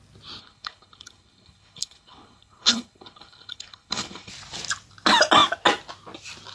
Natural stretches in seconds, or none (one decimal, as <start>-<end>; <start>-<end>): 0.0-0.4; 4.3-6.5